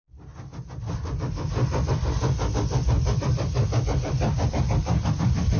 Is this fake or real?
real